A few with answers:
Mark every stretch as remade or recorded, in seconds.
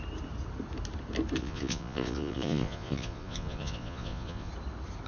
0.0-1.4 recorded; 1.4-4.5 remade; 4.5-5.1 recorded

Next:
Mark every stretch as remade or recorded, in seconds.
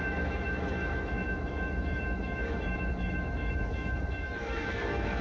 0.0-5.2 remade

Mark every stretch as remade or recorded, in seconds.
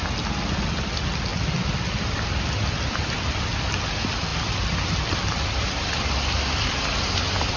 0.0-1.3 recorded; 1.3-3.7 remade; 3.7-4.3 recorded; 4.3-7.6 remade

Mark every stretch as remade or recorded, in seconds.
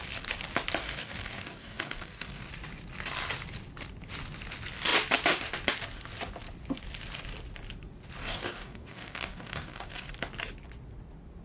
0.0-0.8 recorded; 0.8-2.5 remade; 2.5-8.2 recorded; 8.2-10.1 remade; 10.1-11.4 recorded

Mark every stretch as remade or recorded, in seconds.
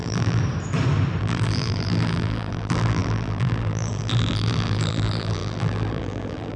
0.0-0.4 remade; 0.4-1.2 recorded; 1.2-6.6 remade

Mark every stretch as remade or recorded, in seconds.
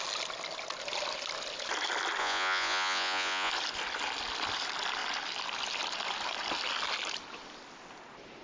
0.0-2.2 recorded; 2.2-3.5 remade; 3.5-8.4 recorded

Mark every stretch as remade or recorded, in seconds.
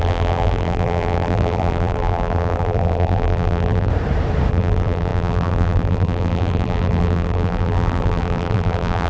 0.0-3.9 remade; 3.9-4.5 recorded; 4.5-9.1 remade